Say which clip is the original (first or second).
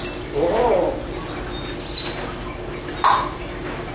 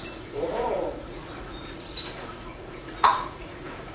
first